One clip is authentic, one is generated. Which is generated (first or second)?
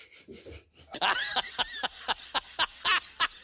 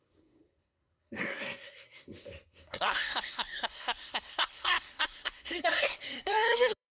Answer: second